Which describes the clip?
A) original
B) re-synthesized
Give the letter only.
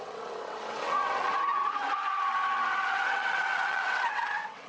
B